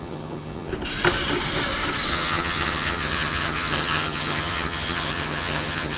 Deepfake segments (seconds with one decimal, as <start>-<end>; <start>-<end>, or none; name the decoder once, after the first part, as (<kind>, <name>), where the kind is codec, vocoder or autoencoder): 0.0-0.7 (vocoder, HiFi-GAN); 2.1-6.0